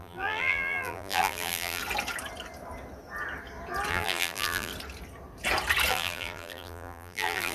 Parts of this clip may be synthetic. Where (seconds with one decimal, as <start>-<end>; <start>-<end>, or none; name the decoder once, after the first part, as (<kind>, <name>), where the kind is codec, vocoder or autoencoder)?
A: 0.0-1.8 (vocoder, BigVGAN v2); 3.9-4.7; 5.9-7.5